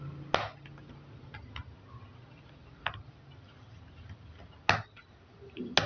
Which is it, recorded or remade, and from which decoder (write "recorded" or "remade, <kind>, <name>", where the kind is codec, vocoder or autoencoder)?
recorded